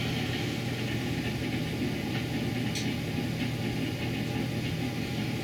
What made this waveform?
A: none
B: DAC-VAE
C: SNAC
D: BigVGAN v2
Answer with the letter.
A